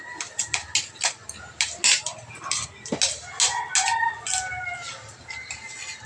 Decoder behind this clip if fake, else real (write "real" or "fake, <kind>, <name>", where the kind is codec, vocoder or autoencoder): real